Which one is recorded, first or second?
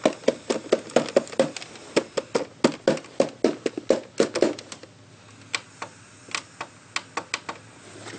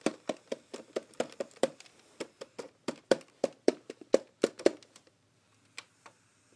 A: first